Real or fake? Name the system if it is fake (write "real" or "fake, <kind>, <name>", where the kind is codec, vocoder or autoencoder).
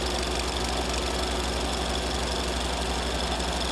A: real